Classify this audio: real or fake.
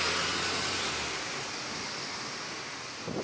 real